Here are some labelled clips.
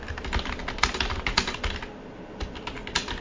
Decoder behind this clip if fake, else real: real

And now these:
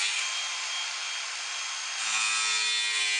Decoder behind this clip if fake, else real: real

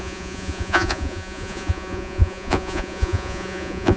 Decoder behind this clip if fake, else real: fake, vocoder, Vocos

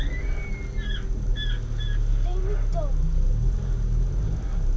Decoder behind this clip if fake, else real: real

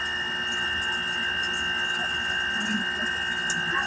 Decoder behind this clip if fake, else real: real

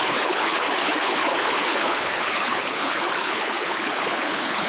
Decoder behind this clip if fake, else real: fake, codec, HILCodec